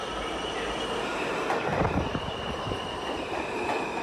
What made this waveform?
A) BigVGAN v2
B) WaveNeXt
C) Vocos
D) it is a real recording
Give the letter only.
A